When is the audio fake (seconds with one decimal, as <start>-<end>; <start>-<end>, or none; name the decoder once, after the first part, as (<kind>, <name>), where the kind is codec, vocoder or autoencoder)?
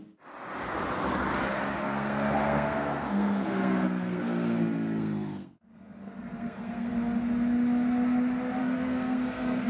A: 1.8-6.9 (codec, SNAC); 8.6-9.7